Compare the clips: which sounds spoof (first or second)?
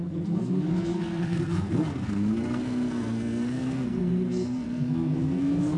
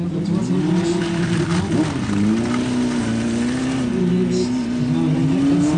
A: first